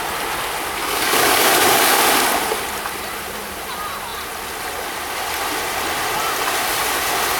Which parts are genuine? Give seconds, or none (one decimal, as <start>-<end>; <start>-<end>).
0.0-0.8; 2.0-7.4